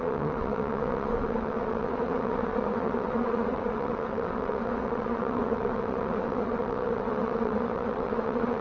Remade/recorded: remade